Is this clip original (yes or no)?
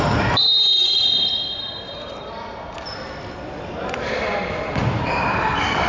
no